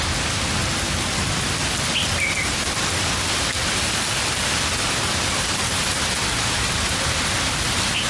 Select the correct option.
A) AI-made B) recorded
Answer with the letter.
B